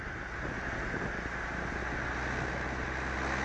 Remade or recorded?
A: recorded